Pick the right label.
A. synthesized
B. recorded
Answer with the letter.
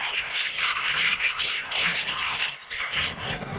A